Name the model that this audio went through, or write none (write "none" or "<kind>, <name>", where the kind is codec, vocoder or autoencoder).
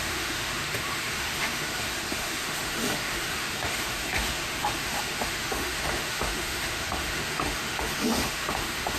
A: autoencoder, DAC-VAE